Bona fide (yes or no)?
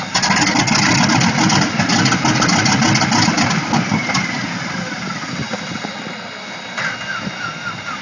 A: yes